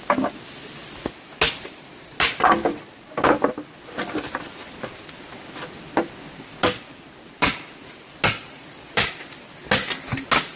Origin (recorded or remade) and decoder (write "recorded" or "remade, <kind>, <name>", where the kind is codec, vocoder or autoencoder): recorded